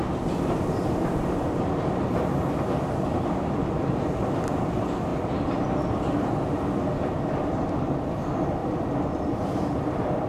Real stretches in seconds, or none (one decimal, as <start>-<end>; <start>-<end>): 0.0-8.6